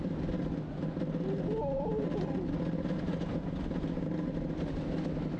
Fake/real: real